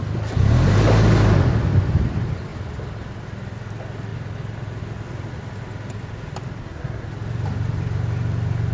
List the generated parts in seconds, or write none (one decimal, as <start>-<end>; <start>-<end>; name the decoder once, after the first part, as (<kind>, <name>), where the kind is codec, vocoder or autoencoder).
6.6-7.1 (codec, SNAC)